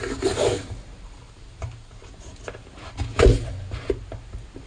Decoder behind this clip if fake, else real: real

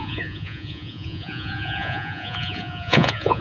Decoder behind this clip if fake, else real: fake, vocoder, Vocos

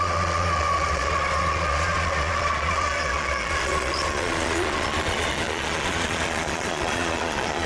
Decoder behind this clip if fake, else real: fake, vocoder, Vocos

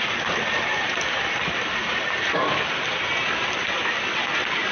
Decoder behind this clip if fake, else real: real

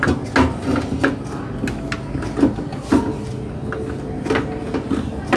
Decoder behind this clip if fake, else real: real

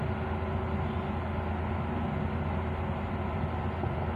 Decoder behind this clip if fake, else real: real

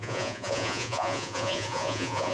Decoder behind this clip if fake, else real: fake, vocoder, Vocos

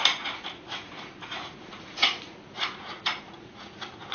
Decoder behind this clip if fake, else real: fake, vocoder, Vocos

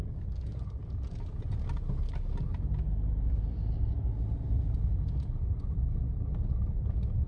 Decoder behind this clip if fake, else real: real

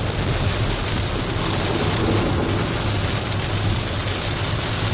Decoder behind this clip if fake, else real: real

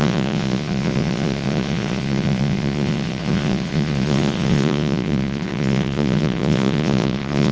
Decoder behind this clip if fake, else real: fake, vocoder, Vocos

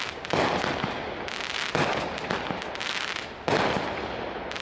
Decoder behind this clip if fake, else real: real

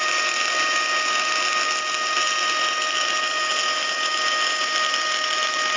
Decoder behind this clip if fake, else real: real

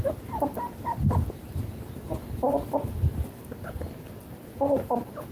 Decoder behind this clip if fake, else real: real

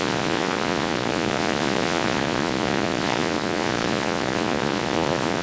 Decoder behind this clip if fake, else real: fake, vocoder, Vocos